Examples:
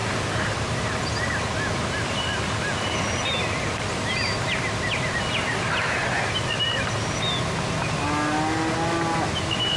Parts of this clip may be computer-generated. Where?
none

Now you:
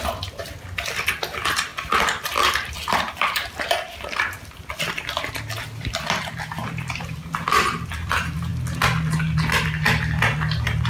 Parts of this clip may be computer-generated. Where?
0.0-1.7 (vocoder, BigVGAN v2); 2.5-8.5; 9.9-10.9

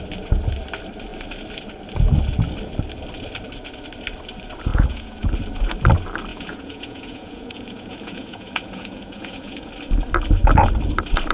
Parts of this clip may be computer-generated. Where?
4.7-5.3 (vocoder, Vocos); 6.3-9.7